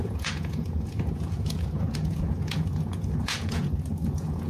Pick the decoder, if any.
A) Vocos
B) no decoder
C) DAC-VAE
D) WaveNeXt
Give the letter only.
A